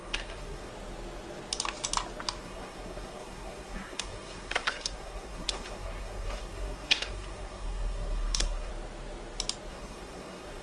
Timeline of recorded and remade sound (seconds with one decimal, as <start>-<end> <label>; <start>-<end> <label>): 0.0-0.7 remade; 0.7-2.4 recorded; 2.4-8.7 remade; 8.7-9.7 recorded; 9.7-10.6 remade

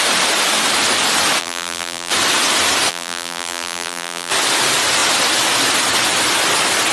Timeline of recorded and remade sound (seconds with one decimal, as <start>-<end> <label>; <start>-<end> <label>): 0.0-1.4 recorded; 1.4-2.1 remade; 2.1-2.9 recorded; 2.9-4.3 remade; 4.3-6.9 recorded